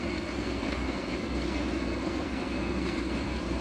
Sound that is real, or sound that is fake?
fake